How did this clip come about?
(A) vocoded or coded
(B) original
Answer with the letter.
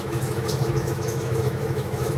A